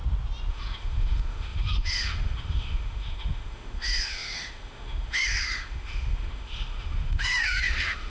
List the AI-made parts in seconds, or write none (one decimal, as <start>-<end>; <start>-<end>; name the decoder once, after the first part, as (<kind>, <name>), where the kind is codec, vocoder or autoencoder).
0.5-8.1 (autoencoder, DAC-VAE)